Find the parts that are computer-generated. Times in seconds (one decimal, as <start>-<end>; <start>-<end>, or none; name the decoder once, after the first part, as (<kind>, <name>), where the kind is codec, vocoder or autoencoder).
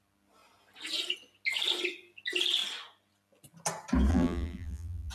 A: 4.1-5.1 (vocoder, BigVGAN v2)